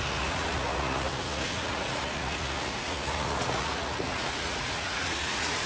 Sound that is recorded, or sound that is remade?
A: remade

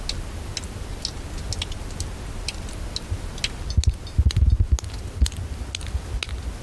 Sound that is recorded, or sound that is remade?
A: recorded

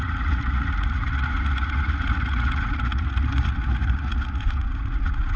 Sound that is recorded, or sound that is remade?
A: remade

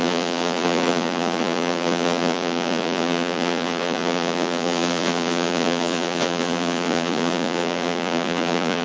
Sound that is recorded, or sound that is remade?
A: remade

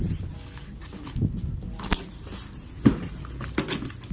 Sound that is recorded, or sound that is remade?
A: recorded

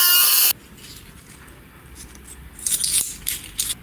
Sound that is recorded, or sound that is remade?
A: recorded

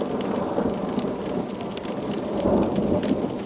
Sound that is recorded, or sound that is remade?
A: recorded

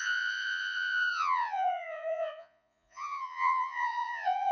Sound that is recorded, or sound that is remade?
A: remade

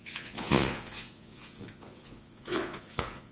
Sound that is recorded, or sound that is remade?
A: remade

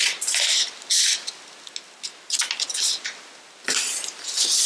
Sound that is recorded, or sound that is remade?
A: recorded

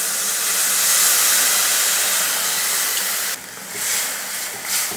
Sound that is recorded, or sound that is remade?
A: recorded